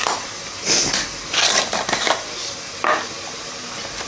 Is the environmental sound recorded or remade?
recorded